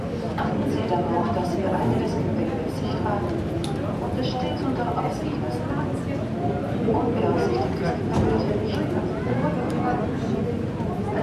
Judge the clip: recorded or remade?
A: recorded